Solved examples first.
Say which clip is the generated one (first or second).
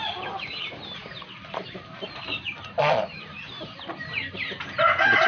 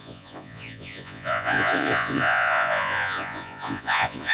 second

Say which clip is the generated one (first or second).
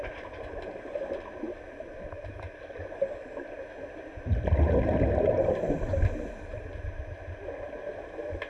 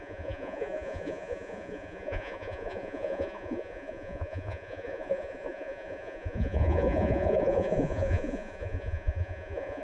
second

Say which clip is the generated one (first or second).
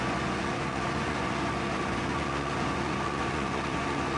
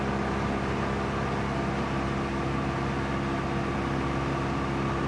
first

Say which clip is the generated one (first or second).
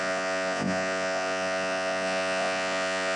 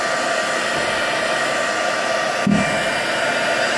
first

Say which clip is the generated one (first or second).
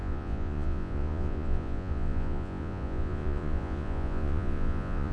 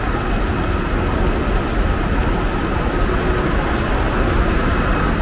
first